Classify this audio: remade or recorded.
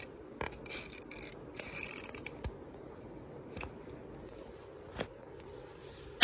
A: recorded